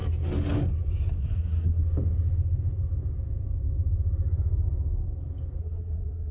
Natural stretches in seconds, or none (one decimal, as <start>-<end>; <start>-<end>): 0.0-1.1; 1.8-5.6